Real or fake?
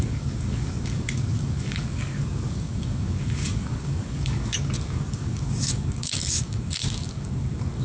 fake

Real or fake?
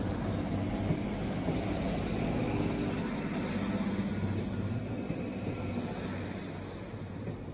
real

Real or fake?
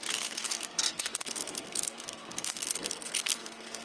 fake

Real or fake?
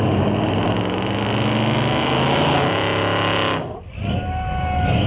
real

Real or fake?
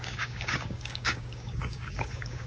fake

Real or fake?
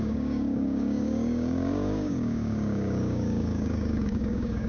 fake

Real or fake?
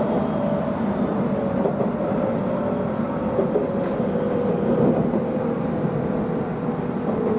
real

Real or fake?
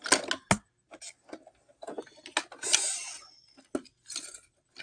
real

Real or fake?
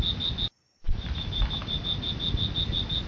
real